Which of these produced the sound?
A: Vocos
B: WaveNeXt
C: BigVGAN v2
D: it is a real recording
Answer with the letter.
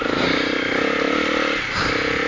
D